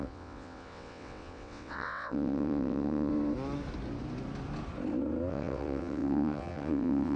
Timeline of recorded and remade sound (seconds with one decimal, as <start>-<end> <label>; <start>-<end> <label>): 0.0-3.1 remade; 3.1-5.3 recorded; 5.3-7.2 remade